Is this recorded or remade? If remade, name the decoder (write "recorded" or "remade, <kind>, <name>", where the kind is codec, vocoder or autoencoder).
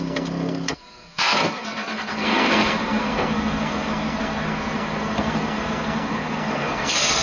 remade, codec, SNAC